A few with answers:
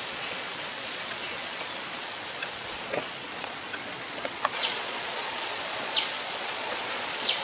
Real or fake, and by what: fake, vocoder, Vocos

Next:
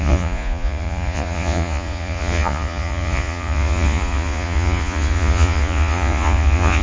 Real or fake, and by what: fake, vocoder, Vocos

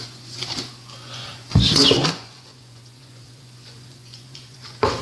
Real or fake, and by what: fake, vocoder, Vocos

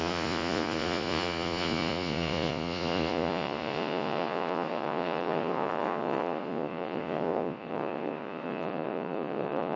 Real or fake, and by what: fake, vocoder, Vocos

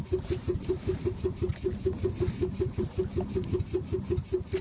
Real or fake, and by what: real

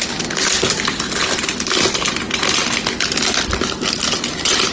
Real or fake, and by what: real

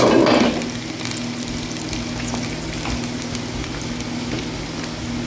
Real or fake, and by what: real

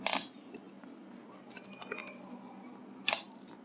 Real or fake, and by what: real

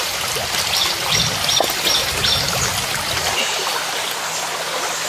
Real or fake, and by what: real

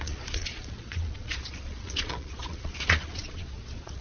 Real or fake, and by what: fake, vocoder, Vocos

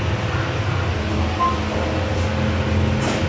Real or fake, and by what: real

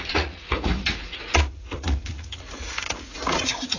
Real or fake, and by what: fake, vocoder, Vocos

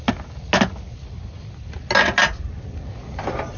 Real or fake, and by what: real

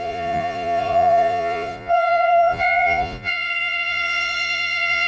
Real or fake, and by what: fake, vocoder, Vocos